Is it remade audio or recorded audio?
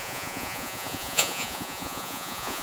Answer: remade